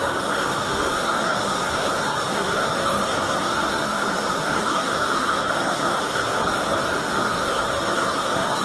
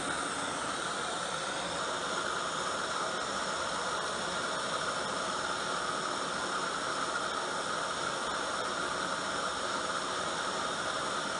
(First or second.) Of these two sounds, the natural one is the second